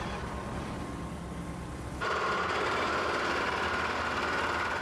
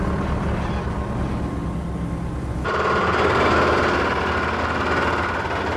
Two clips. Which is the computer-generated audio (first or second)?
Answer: first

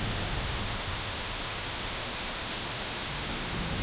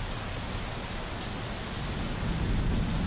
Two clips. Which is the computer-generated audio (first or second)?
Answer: first